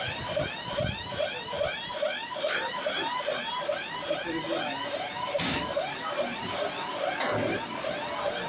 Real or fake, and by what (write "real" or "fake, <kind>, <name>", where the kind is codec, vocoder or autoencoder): real